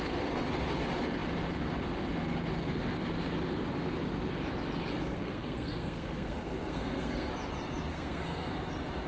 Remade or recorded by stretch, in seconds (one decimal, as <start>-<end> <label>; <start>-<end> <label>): 0.0-4.9 recorded; 4.9-7.3 remade; 7.3-7.9 recorded; 7.9-8.5 remade; 8.5-9.1 recorded